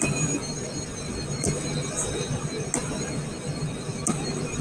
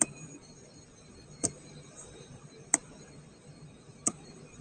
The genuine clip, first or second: first